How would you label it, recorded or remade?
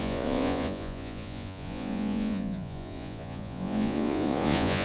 remade